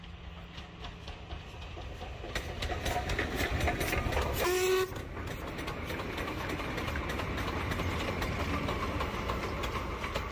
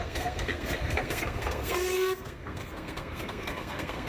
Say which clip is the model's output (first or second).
second